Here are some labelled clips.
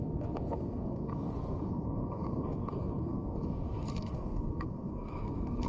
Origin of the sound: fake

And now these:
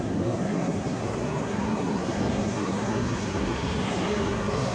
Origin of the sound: fake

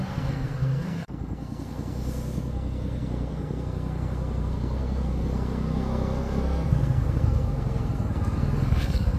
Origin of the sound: fake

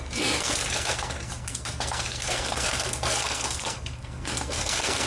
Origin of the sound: fake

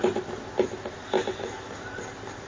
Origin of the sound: real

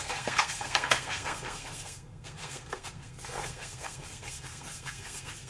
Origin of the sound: fake